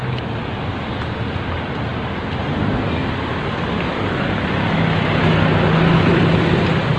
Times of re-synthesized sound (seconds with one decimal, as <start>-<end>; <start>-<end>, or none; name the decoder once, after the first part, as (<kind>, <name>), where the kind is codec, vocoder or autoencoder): none